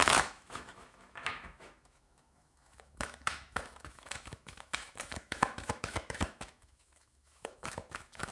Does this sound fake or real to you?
fake